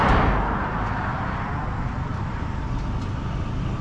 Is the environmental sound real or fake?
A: real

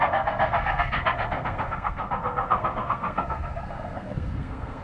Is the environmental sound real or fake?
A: fake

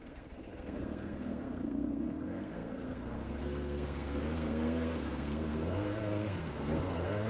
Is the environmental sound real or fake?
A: fake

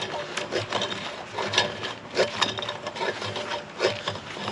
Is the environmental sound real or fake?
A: real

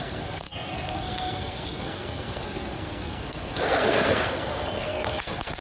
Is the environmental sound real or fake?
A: fake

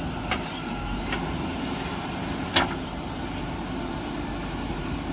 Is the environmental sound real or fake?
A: real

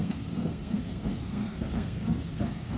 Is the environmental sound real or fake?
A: fake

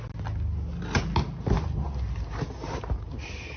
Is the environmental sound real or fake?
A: real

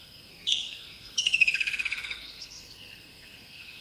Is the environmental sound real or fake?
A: fake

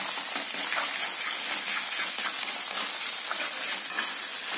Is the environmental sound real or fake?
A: real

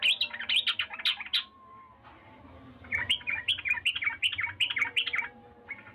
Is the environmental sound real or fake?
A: real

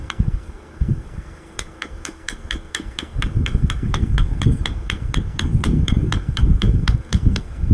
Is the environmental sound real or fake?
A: fake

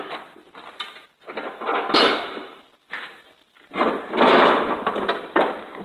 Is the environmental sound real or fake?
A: real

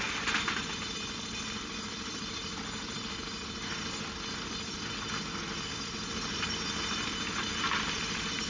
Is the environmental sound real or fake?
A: real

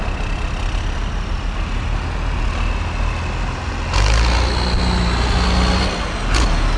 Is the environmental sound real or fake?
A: real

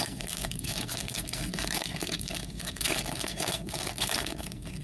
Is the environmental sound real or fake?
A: fake